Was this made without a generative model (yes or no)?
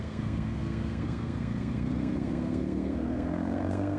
no